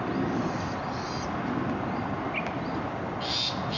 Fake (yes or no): no